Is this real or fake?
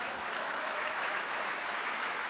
fake